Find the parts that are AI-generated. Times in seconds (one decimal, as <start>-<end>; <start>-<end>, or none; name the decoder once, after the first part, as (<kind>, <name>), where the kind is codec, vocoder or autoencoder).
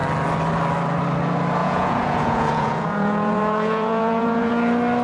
1.6-4.5 (vocoder, Vocos)